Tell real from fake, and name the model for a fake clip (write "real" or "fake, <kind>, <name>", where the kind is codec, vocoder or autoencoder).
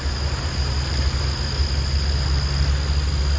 real